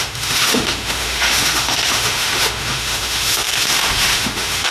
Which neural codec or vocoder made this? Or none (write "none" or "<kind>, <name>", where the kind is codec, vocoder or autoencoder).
autoencoder, DAC-VAE